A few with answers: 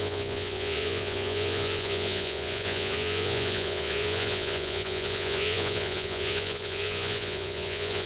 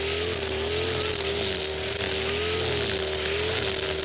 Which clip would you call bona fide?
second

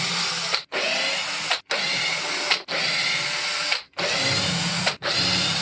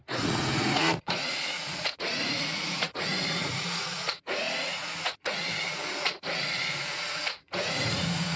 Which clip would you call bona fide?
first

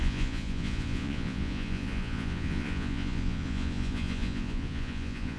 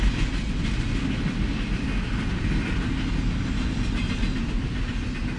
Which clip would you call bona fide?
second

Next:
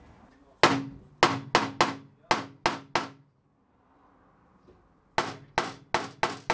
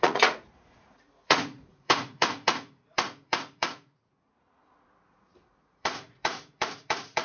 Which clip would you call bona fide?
first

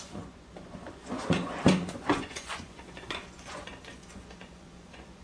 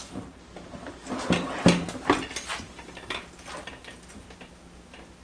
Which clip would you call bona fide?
second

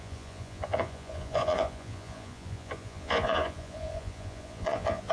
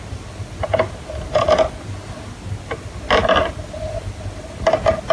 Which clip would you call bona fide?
second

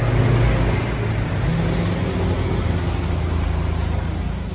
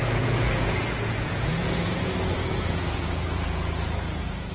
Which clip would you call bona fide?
first